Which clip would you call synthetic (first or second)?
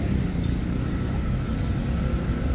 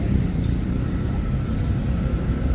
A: second